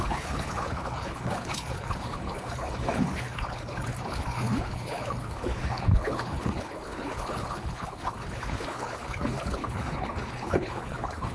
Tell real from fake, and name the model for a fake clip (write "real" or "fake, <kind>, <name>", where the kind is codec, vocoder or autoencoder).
fake, codec, HILCodec